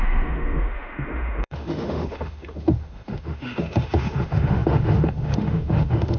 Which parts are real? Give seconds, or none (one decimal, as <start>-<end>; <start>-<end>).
none